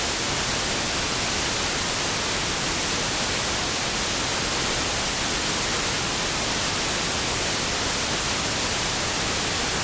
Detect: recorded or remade recorded